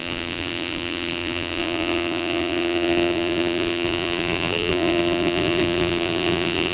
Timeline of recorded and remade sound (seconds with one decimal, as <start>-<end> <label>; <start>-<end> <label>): 0.0-6.7 remade